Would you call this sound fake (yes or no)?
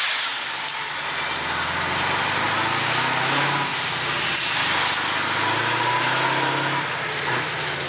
no